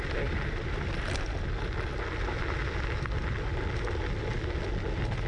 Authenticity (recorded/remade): recorded